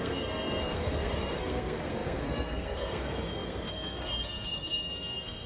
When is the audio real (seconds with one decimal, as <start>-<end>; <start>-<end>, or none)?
none

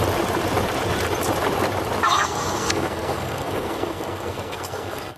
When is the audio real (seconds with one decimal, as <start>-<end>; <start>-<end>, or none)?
0.0-2.0

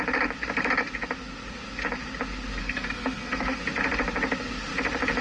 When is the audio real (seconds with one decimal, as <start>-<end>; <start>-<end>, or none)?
0.0-2.6; 3.6-5.2

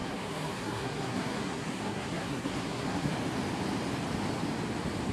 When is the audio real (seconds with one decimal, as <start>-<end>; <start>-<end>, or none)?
3.1-5.1

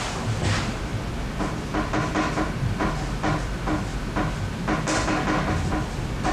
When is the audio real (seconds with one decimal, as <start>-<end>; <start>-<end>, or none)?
0.0-6.3